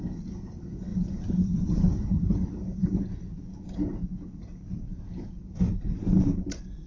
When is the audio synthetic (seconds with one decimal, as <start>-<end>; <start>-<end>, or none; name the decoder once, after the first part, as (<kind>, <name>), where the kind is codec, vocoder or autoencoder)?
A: 0.9-2.2 (vocoder, BigVGAN v2); 4.9-6.9